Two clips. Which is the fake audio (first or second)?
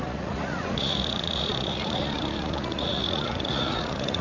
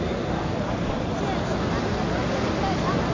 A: first